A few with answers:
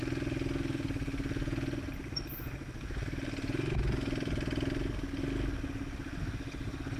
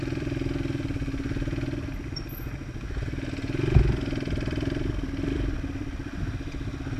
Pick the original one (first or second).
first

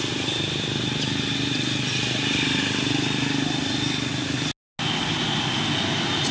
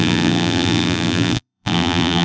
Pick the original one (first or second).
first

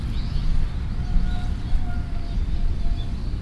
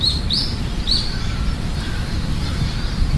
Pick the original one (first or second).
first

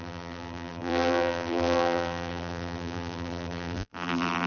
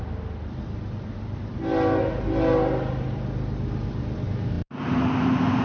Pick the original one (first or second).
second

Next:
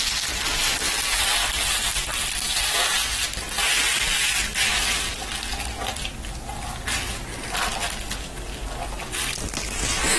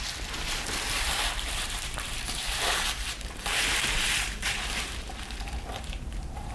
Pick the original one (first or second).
first